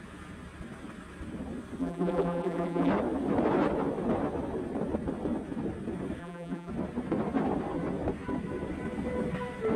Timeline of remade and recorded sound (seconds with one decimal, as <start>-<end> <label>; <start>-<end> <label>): 0.0-1.8 recorded; 1.8-2.9 remade; 2.9-6.2 recorded; 6.2-6.7 remade; 6.7-9.8 recorded